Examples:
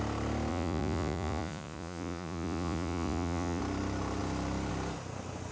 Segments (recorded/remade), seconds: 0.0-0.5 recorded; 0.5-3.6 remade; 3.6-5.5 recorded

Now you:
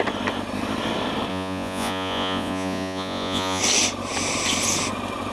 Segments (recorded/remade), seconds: 0.0-1.3 recorded; 1.3-3.6 remade; 3.6-5.3 recorded

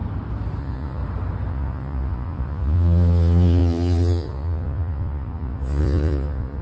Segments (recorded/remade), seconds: 0.0-0.6 recorded; 0.6-1.0 remade; 1.0-1.5 recorded; 1.5-6.6 remade

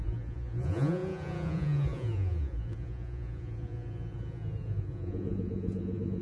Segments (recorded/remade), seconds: 0.0-6.2 remade

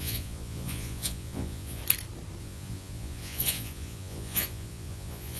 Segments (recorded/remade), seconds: 0.0-1.8 remade; 1.8-2.4 recorded; 2.4-5.4 remade

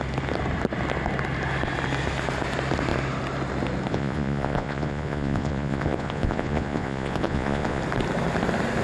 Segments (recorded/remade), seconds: 0.0-3.9 recorded; 3.9-7.8 remade; 7.8-8.8 recorded

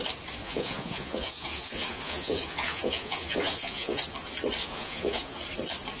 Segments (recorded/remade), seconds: 0.0-0.4 recorded; 0.4-4.0 remade; 4.0-4.6 recorded; 4.6-5.4 remade; 5.4-6.0 recorded

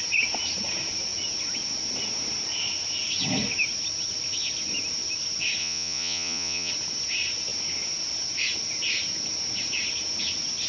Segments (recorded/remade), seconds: 0.0-5.6 recorded; 5.6-6.7 remade; 6.7-10.7 recorded